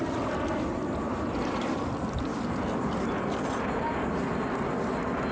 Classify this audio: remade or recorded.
recorded